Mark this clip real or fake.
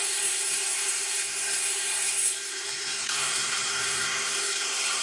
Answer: fake